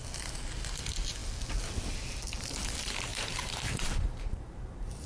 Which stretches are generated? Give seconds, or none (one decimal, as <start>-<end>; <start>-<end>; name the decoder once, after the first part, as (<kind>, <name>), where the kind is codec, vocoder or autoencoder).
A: 3.1-5.1 (vocoder, BigVGAN v2)